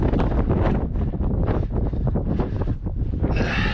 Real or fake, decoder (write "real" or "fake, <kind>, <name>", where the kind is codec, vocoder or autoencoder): real